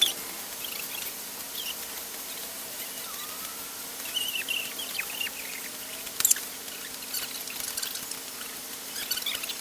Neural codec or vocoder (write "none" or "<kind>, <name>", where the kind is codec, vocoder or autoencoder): none